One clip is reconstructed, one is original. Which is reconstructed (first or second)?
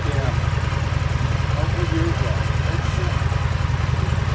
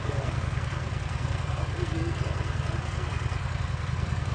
second